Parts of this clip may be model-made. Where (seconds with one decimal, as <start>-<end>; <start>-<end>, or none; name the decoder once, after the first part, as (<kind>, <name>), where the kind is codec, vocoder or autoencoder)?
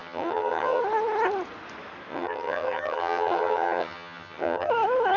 0.0-0.8 (vocoder, HiFi-GAN); 2.1-4.7